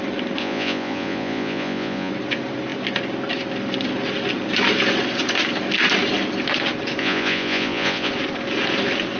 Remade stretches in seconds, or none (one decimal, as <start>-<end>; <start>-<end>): 0.4-2.1; 7.0-8.1